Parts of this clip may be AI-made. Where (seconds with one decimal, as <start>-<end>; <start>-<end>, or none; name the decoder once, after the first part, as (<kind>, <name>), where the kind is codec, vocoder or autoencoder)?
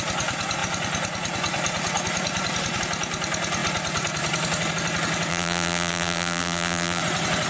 5.3-7.0 (vocoder, BigVGAN v2)